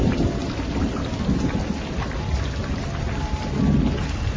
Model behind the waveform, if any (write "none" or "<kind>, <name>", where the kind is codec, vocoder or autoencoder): none